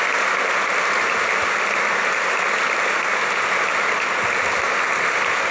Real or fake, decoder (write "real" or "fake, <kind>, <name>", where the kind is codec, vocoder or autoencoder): real